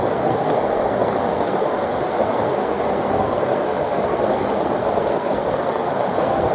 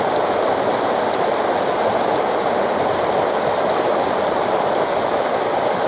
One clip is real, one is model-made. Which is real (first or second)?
second